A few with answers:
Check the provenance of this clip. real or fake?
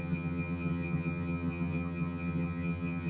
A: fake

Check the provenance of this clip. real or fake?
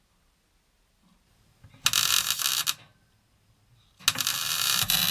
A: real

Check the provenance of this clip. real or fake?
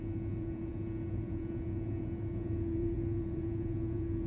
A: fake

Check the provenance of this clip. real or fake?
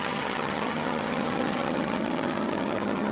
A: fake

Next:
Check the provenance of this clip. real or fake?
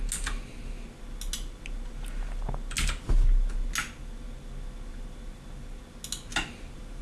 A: real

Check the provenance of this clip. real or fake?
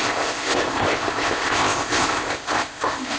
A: fake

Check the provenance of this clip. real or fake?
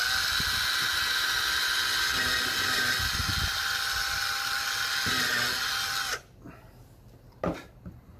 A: real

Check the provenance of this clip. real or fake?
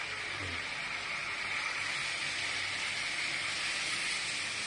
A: real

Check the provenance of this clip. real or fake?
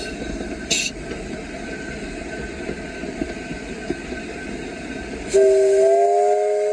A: real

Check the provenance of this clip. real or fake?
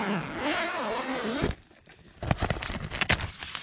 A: real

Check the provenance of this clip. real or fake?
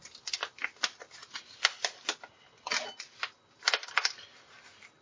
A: real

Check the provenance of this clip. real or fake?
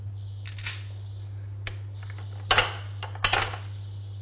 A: real